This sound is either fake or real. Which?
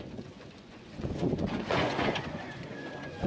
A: fake